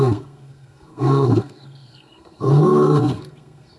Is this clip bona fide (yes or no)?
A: no